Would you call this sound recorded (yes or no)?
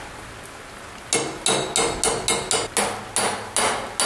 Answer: yes